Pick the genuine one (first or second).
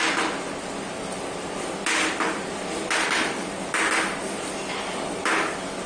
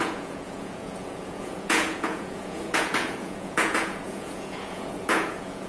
first